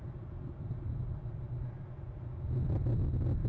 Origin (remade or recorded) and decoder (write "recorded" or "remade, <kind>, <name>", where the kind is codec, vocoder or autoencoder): recorded